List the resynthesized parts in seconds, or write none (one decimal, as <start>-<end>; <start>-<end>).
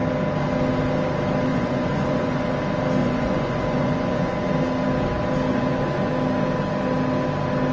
1.5-2.5; 3.0-4.5; 5.5-6.1